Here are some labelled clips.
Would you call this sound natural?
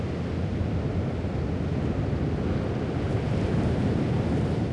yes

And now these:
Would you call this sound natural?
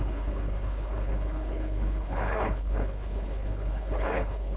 no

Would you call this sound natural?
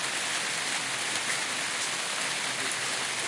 yes